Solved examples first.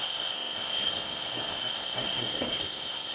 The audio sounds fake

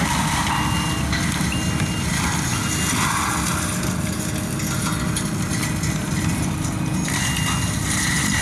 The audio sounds real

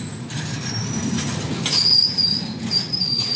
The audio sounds real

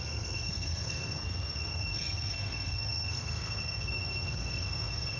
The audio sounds fake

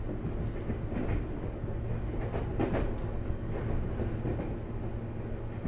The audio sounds real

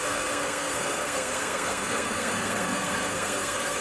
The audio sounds fake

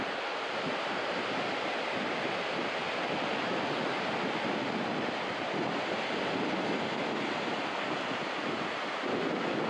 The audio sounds real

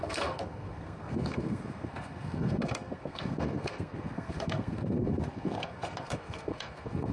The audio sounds fake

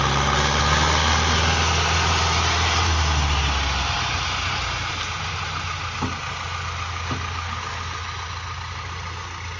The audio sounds real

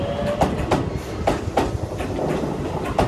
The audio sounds real